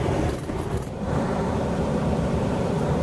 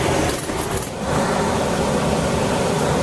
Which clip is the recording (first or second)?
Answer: second